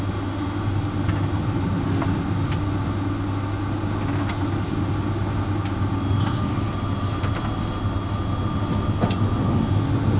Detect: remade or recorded recorded